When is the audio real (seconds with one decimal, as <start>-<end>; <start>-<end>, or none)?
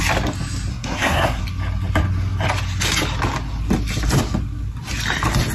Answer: 0.0-0.7; 1.4-5.5